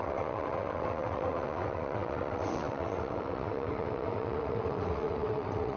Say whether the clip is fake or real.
fake